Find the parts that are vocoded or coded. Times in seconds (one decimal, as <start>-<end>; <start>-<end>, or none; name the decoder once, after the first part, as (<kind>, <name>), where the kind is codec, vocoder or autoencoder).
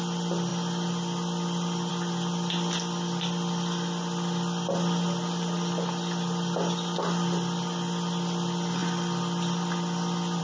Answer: none